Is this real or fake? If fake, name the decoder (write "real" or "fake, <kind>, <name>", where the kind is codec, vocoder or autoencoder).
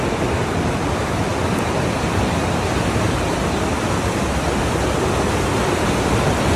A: real